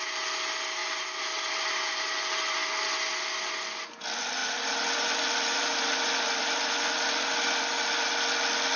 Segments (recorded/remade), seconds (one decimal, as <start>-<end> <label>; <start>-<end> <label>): 0.0-0.8 recorded; 0.8-2.7 remade; 2.7-4.4 recorded; 4.4-8.1 remade; 8.1-8.8 recorded